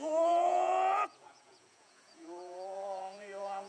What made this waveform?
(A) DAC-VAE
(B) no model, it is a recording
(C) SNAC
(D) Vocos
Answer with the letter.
D